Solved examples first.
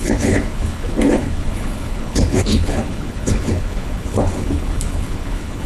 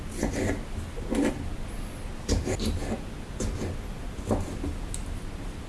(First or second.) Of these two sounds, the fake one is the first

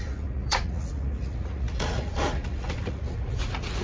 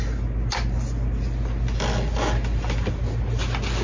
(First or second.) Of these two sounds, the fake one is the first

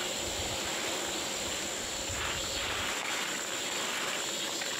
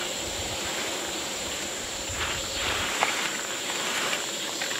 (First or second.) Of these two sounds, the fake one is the second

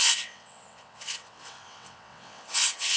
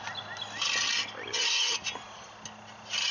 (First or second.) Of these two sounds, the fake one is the first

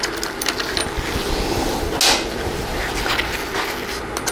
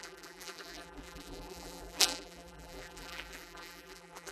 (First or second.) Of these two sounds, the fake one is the second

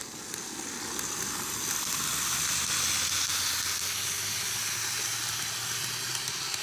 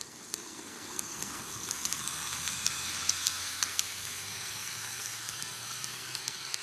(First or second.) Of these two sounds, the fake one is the second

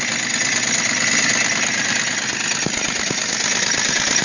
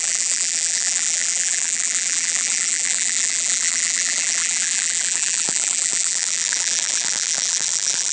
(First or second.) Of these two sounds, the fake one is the second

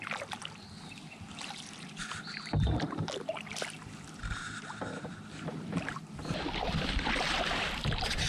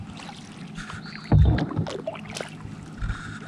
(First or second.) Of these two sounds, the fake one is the first